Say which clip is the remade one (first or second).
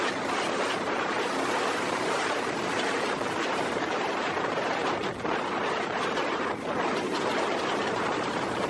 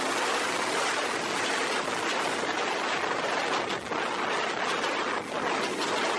first